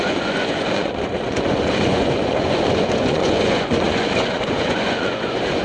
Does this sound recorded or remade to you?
remade